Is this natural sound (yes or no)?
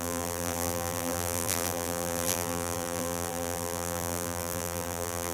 no